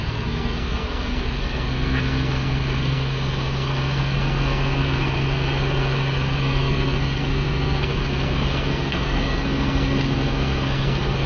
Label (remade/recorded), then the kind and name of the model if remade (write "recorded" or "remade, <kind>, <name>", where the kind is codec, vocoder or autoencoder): remade, codec, SNAC